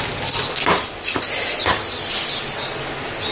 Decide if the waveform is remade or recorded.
recorded